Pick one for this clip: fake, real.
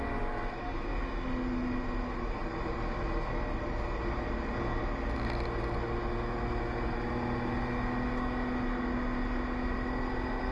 real